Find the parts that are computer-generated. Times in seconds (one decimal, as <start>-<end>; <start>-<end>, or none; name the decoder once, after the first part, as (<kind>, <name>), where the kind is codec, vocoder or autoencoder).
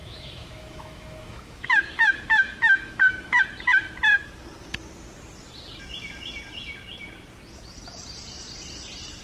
0.0-3.4 (autoencoder, DAC-VAE)